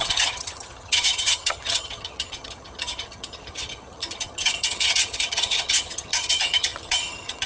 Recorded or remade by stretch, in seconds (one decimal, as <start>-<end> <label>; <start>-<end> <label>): 0.0-7.5 remade